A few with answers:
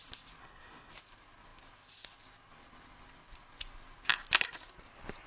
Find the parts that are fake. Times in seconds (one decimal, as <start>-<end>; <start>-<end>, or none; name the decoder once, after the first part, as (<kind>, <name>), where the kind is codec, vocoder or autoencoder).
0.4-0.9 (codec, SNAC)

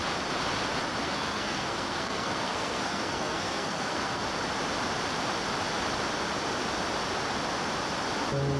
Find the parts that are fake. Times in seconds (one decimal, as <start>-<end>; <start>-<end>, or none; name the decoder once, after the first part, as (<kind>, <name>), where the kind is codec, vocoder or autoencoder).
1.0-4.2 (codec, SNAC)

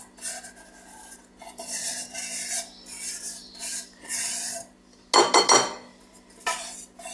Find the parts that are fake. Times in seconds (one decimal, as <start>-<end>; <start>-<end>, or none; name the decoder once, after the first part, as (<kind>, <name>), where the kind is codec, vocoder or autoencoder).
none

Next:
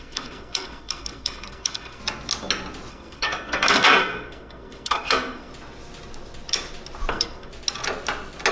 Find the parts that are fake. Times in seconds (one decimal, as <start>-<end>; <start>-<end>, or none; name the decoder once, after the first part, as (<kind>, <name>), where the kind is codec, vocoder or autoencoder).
0.0-2.0 (codec, SNAC); 2.9-5.5; 7.1-7.5

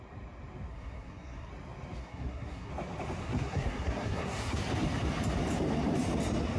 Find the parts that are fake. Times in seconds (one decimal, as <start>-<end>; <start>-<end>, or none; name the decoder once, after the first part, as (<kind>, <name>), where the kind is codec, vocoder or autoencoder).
0.7-1.5 (codec, SNAC); 2.0-2.7; 3.2-4.6

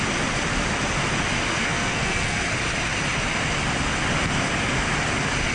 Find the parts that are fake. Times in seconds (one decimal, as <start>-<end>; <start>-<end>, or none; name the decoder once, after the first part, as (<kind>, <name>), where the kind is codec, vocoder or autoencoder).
1.5-2.5 (codec, SNAC)

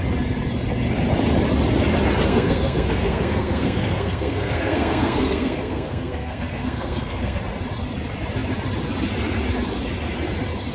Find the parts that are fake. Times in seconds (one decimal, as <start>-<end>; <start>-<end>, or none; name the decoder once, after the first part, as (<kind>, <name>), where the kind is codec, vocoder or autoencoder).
2.3-7.4 (codec, SNAC)